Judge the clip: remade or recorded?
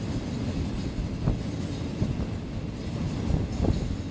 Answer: recorded